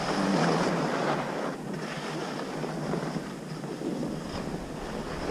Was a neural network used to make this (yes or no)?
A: no